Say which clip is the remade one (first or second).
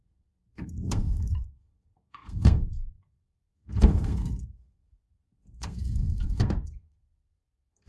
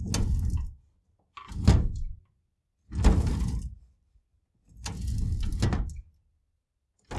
first